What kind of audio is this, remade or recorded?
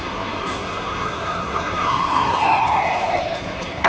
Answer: remade